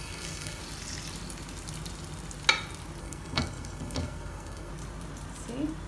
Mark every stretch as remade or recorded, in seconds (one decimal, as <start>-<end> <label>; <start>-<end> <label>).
0.0-0.6 remade; 0.6-3.0 recorded; 3.0-4.7 remade; 4.7-5.9 recorded